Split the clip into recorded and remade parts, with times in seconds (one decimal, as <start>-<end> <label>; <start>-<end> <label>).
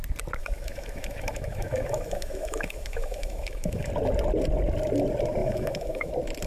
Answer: 0.0-0.4 recorded; 0.4-3.9 remade; 3.9-5.4 recorded; 5.4-6.1 remade; 6.1-6.5 recorded